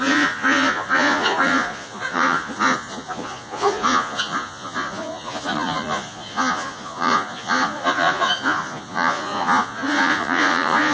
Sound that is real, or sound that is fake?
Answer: fake